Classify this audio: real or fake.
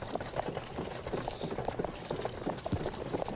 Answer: real